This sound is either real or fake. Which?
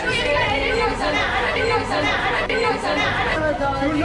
real